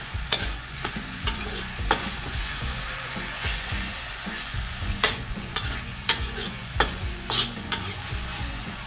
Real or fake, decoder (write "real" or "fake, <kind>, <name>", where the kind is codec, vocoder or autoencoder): fake, vocoder, Vocos